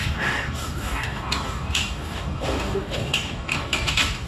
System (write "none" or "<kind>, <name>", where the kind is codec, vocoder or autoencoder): codec, DAC